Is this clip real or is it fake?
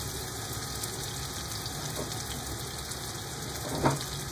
real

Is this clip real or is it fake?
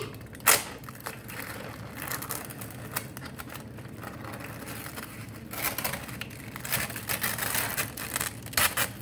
real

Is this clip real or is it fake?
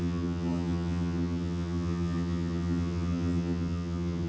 fake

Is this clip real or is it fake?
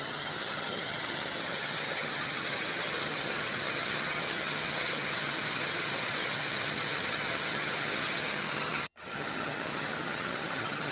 fake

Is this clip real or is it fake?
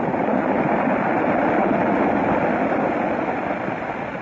real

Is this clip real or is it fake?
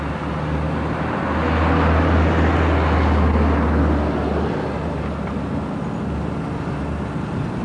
real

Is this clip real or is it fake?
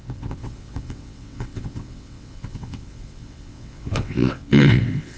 fake